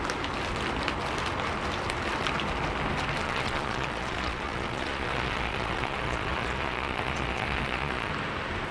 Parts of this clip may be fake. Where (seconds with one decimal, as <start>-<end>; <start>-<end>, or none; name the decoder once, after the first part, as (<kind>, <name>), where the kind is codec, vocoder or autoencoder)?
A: 3.2-8.1 (vocoder, Vocos)